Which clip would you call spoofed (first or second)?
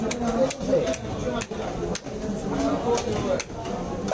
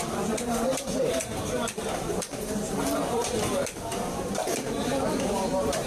second